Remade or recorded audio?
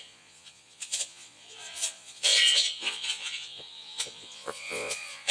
remade